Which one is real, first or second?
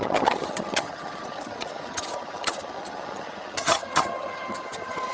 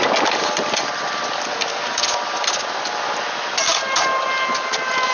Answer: second